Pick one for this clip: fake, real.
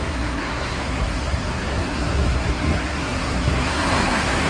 fake